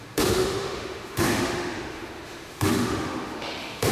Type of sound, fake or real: fake